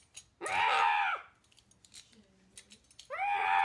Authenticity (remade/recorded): recorded